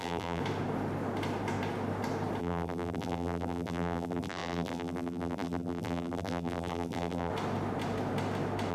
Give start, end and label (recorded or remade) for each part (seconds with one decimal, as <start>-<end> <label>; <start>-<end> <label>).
0.0-0.4 remade; 0.4-2.4 recorded; 2.4-7.3 remade; 7.3-8.7 recorded